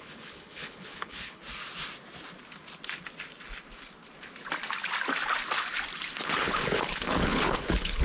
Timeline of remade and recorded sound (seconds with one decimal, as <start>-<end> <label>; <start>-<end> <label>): 0.0-1.4 remade; 1.4-6.2 recorded; 6.2-8.0 remade